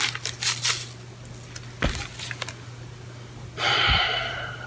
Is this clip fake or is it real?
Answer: real